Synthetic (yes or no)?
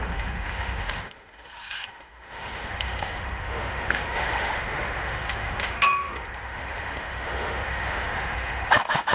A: yes